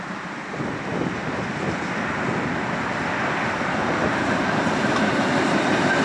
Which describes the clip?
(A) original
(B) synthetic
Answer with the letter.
A